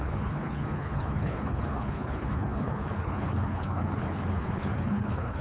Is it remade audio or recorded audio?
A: remade